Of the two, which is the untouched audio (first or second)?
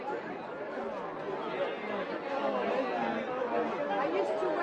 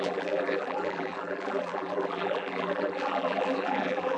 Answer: first